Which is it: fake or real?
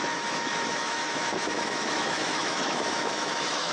fake